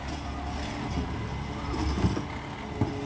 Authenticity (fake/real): real